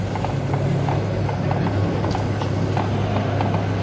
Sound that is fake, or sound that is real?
real